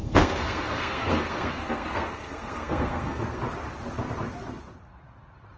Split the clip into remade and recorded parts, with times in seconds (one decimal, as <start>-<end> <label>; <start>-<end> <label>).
0.0-3.4 remade; 3.4-5.6 recorded